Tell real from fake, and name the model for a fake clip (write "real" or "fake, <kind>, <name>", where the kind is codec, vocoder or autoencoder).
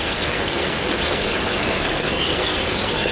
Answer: fake, codec, SNAC